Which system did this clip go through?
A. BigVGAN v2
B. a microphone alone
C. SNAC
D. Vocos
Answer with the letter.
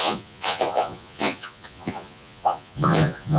D